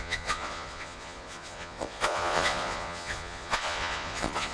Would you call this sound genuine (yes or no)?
no